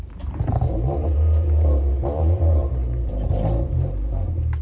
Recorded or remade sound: remade